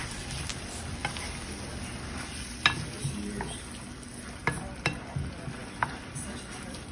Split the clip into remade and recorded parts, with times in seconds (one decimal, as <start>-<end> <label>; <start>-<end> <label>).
0.0-0.5 remade; 0.5-5.6 recorded; 5.6-6.9 remade

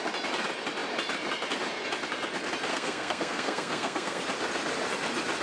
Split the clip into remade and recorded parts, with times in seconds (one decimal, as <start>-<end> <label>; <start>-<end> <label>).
0.0-2.7 recorded; 2.7-4.2 remade; 4.2-5.4 recorded

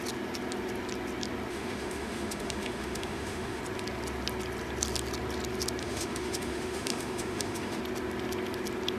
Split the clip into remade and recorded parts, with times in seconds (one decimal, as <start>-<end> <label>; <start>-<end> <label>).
0.0-1.5 recorded; 1.5-3.6 remade; 3.6-5.8 recorded; 5.8-7.8 remade; 7.8-9.0 recorded

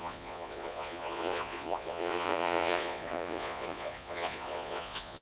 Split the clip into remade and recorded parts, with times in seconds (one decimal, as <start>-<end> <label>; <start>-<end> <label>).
0.0-5.2 remade